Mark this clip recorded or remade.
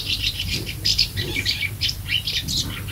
remade